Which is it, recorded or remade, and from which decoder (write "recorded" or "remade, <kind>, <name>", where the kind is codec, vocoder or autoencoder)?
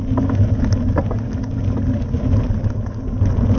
recorded